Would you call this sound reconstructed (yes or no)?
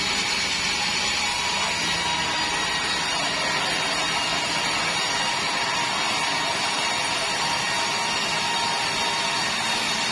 no